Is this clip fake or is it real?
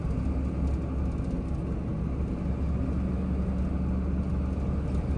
real